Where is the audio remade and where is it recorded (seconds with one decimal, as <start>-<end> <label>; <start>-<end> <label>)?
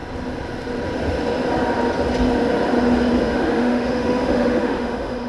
0.0-3.2 recorded; 3.2-5.3 remade